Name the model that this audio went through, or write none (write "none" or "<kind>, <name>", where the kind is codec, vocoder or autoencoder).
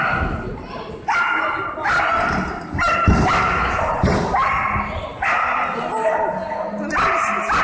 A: none